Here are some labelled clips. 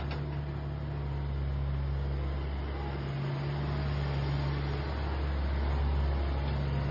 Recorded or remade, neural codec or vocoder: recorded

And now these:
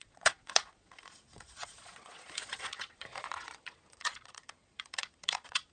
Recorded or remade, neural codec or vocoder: remade, vocoder, Vocos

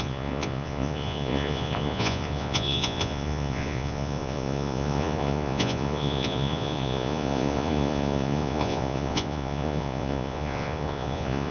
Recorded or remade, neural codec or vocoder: remade, vocoder, Vocos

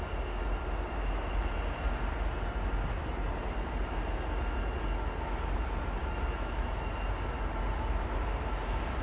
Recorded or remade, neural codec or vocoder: recorded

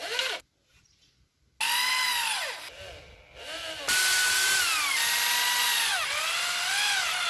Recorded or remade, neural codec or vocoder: recorded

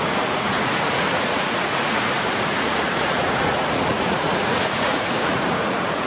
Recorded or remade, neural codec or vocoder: remade, vocoder, Vocos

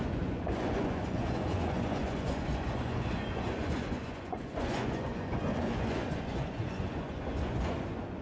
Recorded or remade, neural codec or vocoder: remade, vocoder, Vocos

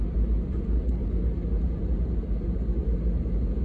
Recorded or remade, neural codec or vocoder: recorded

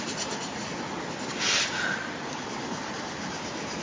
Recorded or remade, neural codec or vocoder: recorded